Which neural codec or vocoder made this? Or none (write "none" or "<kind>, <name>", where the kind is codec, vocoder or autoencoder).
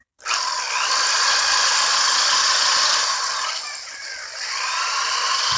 none